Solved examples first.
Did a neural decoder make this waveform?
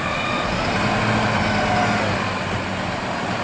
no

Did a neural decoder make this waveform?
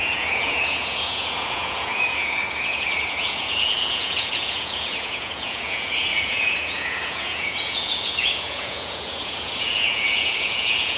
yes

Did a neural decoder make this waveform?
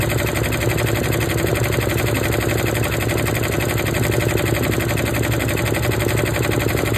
no